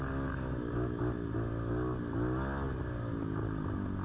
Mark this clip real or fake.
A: real